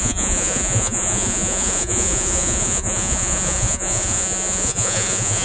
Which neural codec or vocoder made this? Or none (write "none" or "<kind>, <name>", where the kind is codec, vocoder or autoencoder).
vocoder, Vocos